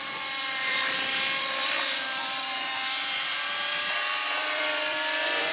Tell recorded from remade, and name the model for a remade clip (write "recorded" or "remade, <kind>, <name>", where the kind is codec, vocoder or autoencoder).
remade, vocoder, BigVGAN v2